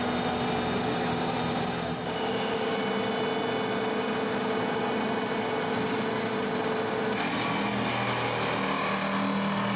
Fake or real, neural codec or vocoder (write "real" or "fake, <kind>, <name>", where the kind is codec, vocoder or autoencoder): real